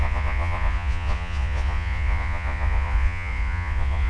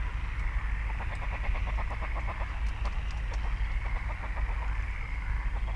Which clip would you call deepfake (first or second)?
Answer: first